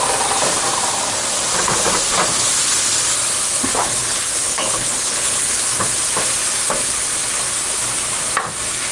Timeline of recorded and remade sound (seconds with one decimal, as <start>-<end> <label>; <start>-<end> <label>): 0.0-3.8 recorded; 3.8-5.6 remade; 5.6-8.9 recorded